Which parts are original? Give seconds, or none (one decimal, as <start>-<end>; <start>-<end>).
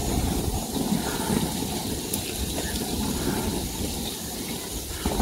1.2-5.2